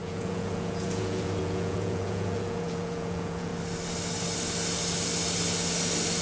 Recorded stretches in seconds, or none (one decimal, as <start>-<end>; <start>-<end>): 3.5-6.2